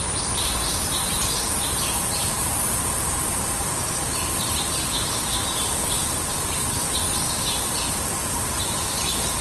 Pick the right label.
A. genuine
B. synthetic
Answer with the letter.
B